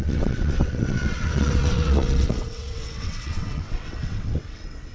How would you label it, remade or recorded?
remade